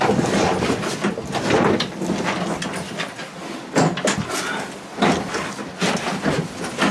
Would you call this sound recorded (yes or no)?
yes